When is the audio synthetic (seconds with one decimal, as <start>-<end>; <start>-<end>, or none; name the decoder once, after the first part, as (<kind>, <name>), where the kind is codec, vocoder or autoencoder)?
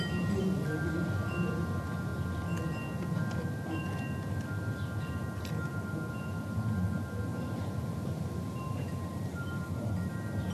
7.3-9.9 (vocoder, BigVGAN v2)